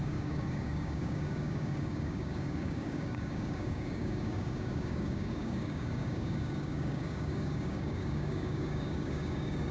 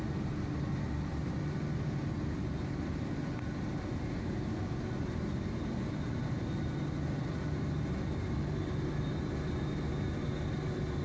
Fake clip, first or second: first